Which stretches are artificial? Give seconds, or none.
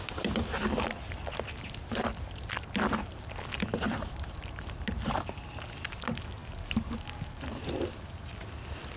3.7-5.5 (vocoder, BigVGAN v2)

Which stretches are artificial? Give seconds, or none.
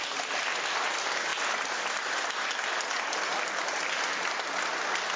none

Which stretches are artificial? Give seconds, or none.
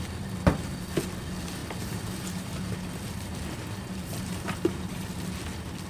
1.6-2.5 (vocoder, BigVGAN v2); 4.1-5.0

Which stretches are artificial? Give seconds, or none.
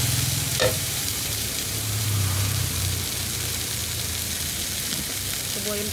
0.5-2.8 (vocoder, BigVGAN v2)